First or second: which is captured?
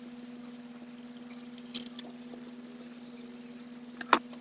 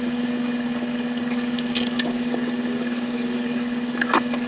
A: first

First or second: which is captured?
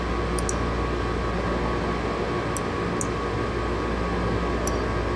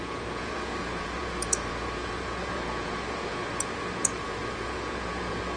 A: first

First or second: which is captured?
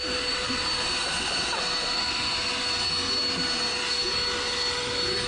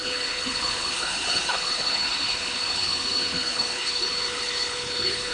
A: first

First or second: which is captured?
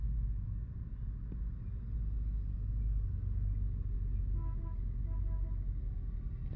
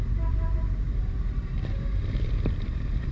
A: first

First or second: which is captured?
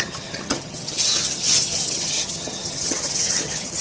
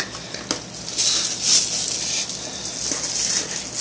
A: second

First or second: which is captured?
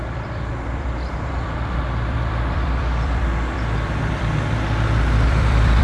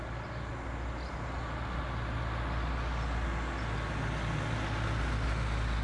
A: second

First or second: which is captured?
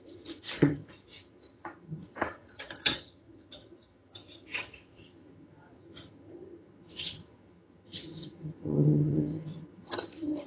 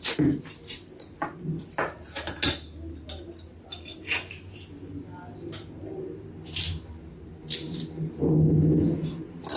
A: second